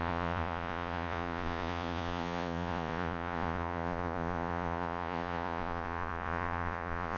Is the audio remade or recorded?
remade